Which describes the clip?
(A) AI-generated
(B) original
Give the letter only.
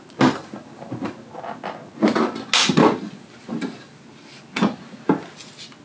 B